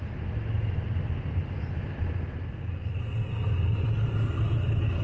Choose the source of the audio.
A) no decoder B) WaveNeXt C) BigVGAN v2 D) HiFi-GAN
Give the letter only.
A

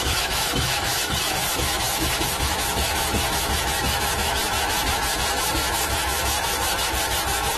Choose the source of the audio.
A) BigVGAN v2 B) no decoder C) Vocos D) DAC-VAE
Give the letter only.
D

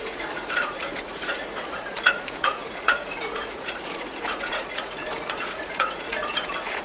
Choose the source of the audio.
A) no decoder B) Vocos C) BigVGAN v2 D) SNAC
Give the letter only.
B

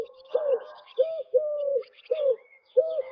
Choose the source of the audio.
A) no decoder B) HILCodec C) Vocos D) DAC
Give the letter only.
D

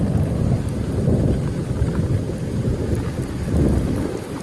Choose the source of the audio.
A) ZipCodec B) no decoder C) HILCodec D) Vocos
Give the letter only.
B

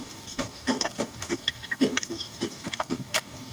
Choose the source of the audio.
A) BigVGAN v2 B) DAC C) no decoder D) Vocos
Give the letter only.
B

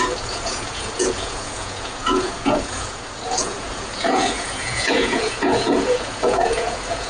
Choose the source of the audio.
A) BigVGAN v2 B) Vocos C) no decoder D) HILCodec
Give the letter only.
B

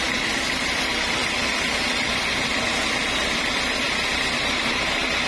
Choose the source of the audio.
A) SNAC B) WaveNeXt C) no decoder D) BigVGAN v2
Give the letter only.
C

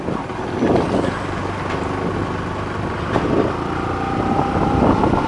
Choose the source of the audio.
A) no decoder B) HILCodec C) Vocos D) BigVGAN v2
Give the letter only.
A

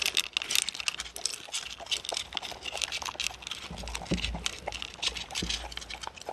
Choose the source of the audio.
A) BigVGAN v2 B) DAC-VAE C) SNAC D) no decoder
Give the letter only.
D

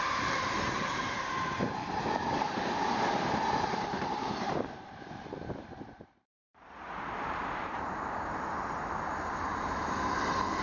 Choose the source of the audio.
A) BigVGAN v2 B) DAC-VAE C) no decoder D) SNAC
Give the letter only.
A